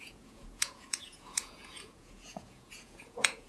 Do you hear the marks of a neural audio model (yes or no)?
yes